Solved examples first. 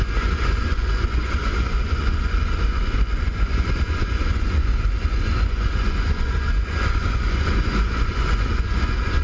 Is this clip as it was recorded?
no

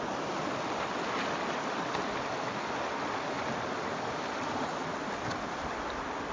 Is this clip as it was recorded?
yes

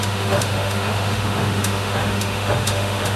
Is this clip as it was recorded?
no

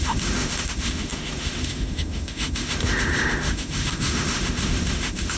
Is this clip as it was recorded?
no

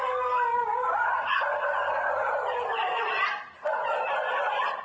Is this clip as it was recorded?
yes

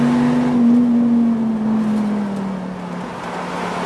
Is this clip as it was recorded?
yes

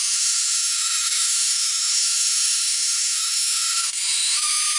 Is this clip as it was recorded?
no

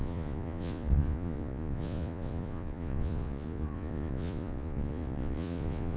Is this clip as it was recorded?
no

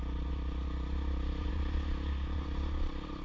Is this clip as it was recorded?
yes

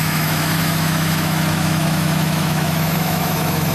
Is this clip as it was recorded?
no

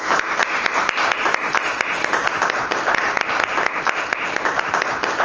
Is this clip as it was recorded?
yes